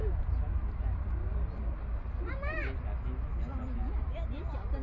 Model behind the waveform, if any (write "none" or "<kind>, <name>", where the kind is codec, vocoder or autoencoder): none